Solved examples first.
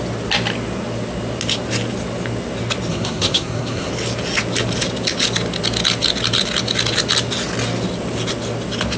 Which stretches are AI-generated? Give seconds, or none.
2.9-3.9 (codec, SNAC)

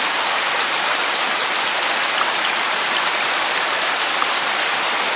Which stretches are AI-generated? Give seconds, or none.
1.0-4.1 (vocoder, BigVGAN v2)

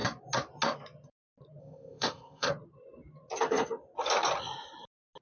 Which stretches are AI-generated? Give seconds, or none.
1.6-2.5 (codec, ZipCodec)